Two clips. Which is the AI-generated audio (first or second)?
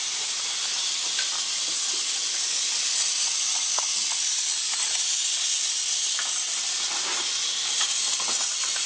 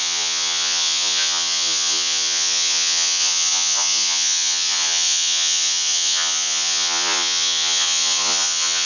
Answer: second